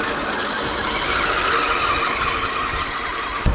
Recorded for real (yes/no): yes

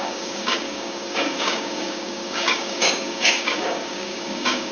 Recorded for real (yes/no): no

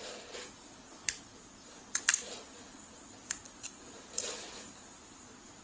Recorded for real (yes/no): yes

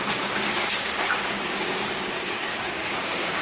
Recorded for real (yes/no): no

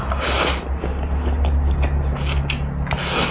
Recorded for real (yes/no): yes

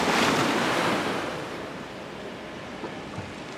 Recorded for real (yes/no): yes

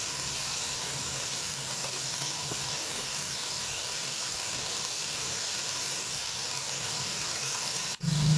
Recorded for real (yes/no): no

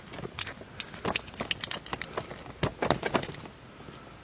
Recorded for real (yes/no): yes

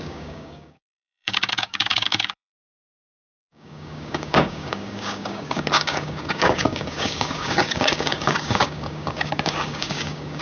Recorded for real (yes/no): no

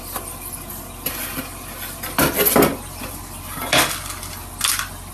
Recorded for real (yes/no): yes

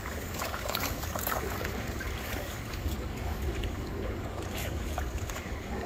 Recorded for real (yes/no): no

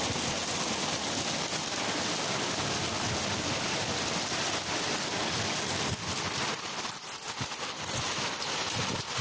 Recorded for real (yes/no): yes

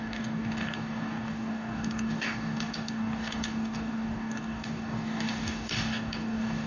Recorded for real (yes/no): no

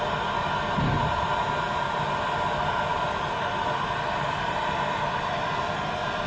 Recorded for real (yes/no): yes